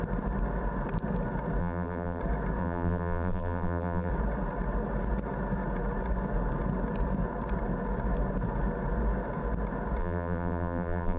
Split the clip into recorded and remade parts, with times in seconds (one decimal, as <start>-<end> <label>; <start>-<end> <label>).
0.0-1.6 recorded; 1.6-2.2 remade; 2.2-2.6 recorded; 2.6-4.1 remade; 4.1-10.0 recorded; 10.0-11.2 remade